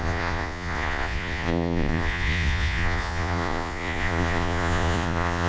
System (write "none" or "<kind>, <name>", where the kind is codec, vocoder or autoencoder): vocoder, Vocos